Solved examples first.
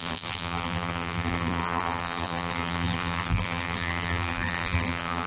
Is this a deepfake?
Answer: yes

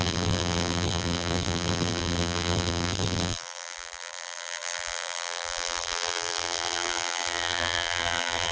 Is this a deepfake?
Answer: yes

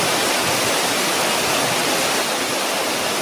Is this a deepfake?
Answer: no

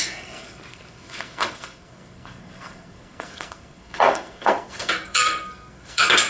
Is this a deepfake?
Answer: yes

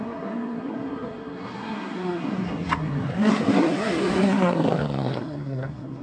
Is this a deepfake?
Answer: yes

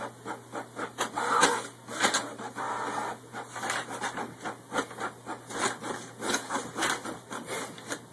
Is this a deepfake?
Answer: no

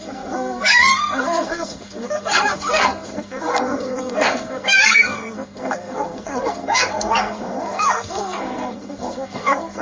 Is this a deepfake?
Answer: yes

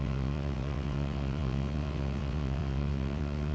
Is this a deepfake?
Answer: yes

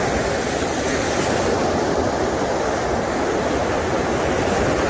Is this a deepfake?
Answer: no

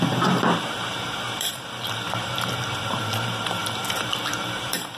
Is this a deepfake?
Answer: yes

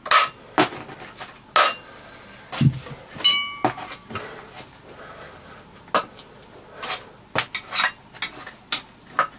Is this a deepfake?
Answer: no